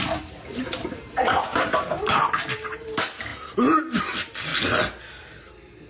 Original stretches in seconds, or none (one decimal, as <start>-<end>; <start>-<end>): 2.2-2.8; 4.5-5.9